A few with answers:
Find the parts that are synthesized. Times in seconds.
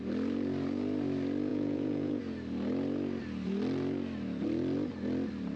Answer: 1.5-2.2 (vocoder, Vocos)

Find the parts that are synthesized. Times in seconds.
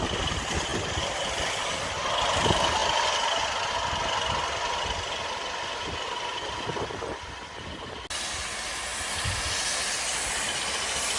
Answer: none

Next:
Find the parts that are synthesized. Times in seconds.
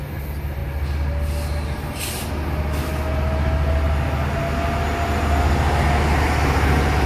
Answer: none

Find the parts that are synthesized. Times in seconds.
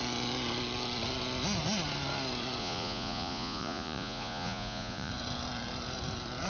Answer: 2.6-5.1 (vocoder, Vocos)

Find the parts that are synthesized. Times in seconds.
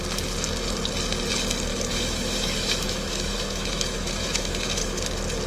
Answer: 1.7-5.0 (autoencoder, DAC-VAE)